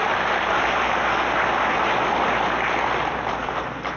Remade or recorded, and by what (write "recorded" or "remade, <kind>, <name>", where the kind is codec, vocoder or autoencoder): recorded